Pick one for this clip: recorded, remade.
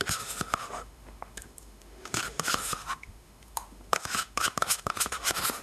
remade